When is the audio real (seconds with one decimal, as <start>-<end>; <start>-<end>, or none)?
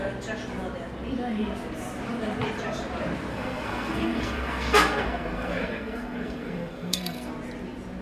0.0-3.3; 7.3-8.0